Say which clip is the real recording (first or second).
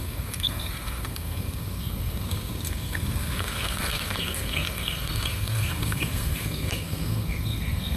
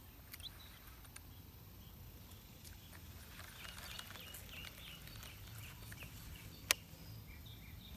second